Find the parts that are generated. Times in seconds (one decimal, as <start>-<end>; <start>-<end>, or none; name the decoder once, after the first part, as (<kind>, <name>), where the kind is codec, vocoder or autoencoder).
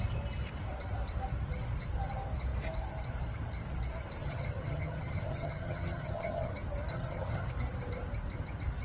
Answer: 4.2-6.5 (vocoder, HiFi-GAN); 6.9-7.5